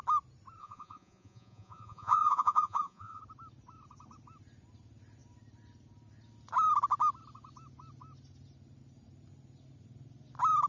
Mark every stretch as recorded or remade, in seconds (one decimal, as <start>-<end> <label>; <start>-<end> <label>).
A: 0.0-0.6 recorded; 0.6-3.2 remade; 3.2-10.7 recorded